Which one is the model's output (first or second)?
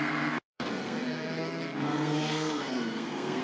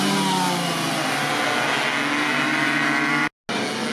first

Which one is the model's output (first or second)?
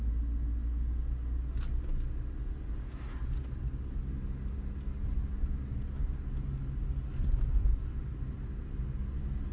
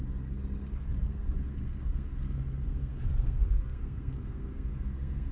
second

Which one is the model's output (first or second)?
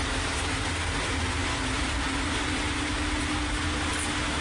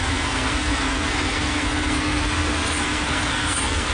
second